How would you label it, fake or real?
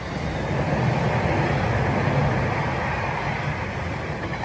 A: real